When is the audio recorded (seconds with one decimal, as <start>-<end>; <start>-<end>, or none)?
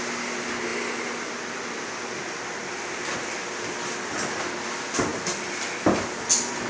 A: 0.0-6.7